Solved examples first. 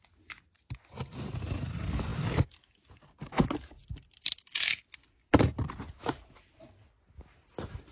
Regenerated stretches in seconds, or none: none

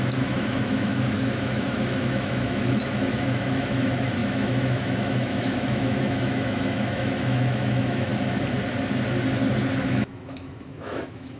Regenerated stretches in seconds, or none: 0.0-8.1; 9.8-11.4

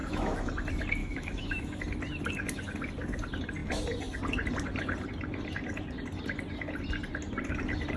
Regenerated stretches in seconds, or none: 0.0-0.5; 1.0-1.8

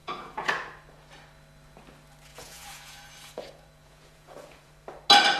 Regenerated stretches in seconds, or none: 0.0-0.5; 2.3-4.7